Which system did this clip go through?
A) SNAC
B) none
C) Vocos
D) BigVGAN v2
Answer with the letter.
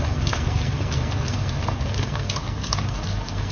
A